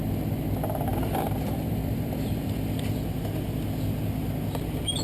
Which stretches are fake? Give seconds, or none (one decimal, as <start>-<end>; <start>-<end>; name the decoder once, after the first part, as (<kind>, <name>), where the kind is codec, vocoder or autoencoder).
0.9-2.5 (vocoder, BigVGAN v2)